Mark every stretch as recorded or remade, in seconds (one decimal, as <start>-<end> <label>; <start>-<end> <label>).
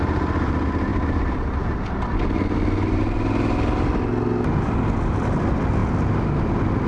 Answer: 0.0-6.9 recorded